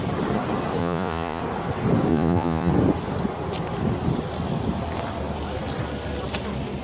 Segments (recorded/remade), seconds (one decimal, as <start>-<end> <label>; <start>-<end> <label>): 0.0-0.8 recorded; 0.8-1.4 remade; 1.4-2.1 recorded; 2.1-2.7 remade; 2.7-6.8 recorded